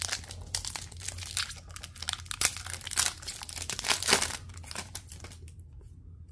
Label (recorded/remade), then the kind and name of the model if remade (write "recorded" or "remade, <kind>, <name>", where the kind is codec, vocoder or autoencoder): recorded